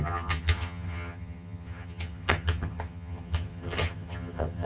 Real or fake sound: fake